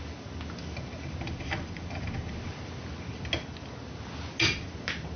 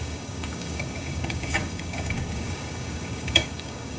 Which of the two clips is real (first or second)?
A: first